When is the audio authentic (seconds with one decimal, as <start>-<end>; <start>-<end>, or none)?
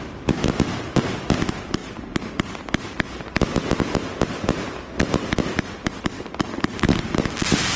0.0-7.8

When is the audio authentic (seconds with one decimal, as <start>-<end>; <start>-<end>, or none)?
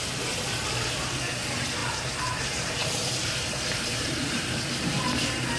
0.0-1.8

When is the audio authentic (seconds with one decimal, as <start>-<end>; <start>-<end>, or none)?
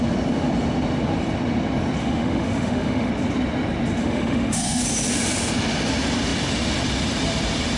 0.0-2.0; 3.1-4.0; 4.8-7.8